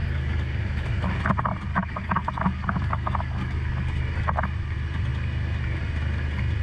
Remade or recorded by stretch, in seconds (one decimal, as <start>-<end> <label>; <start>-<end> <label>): 0.0-1.2 remade; 1.2-1.7 recorded; 1.7-4.0 remade; 4.0-6.6 recorded